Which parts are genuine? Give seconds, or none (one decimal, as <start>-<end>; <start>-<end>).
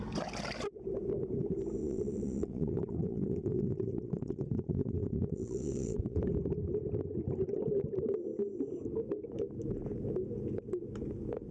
0.0-1.8; 6.2-11.5